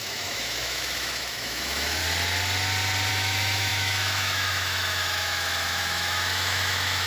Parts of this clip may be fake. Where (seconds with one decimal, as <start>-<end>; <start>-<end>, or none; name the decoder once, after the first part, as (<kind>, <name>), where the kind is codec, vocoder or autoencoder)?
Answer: 0.0-2.0 (autoencoder, DAC-VAE); 3.1-7.1